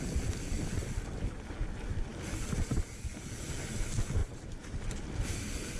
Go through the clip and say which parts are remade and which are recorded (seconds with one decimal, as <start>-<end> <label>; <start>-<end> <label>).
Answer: 0.0-4.2 recorded; 4.2-4.9 remade; 4.9-5.8 recorded